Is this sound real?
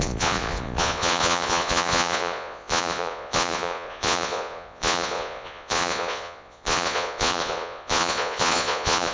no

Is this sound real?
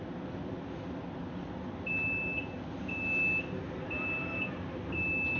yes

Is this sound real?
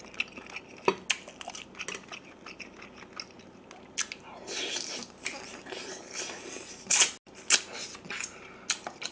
yes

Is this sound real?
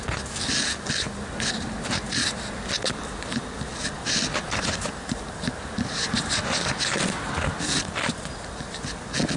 yes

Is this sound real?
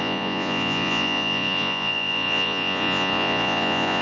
no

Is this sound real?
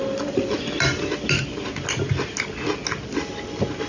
yes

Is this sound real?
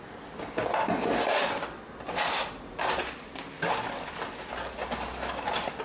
yes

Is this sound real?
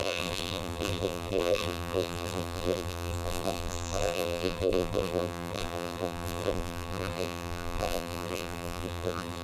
no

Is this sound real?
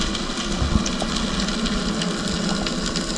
yes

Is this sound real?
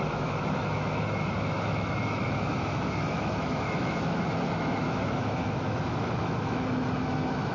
no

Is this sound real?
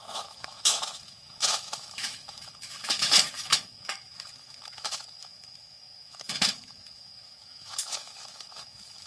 no